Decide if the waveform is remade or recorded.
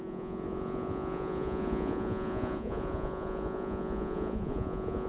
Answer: remade